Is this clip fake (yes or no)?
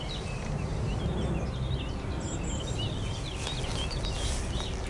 no